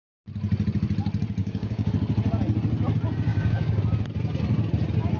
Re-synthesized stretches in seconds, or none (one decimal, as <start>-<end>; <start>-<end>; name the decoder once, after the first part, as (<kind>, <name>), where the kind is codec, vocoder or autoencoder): 1.4-1.9 (codec, DAC); 3.3-3.8